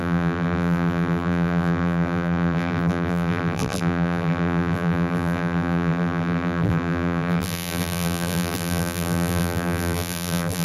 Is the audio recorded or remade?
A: remade